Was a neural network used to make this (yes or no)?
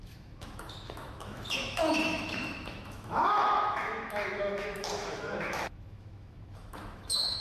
yes